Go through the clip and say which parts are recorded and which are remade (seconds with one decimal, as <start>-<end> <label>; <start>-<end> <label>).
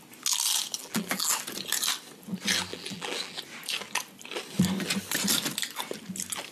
0.0-0.8 recorded; 0.8-1.3 remade; 1.3-2.7 recorded; 2.7-3.4 remade; 3.4-6.5 recorded